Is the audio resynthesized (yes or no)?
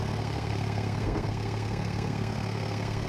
yes